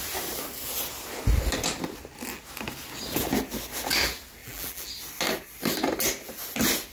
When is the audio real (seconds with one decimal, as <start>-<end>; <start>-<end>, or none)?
0.0-4.4; 4.9-6.9